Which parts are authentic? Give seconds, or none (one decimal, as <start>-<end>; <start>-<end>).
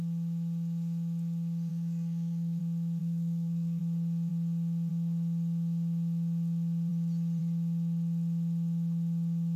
0.0-1.7; 2.6-3.0; 3.8-9.6